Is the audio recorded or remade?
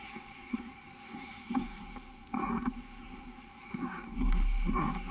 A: remade